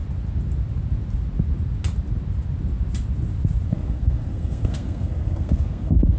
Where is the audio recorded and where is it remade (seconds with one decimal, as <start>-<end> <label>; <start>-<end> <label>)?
0.0-3.7 recorded; 3.7-6.2 remade